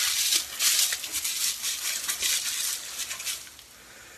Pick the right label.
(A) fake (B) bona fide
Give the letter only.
B